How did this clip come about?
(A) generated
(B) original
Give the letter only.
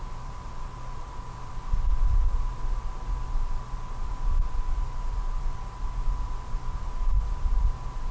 A